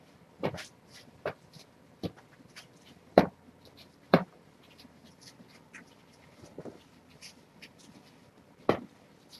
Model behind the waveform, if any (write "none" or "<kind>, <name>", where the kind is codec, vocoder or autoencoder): vocoder, BigVGAN v2